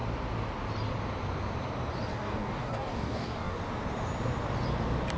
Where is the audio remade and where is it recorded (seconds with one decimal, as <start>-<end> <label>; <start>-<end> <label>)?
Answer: 0.0-2.1 recorded; 2.1-3.6 remade; 3.6-5.2 recorded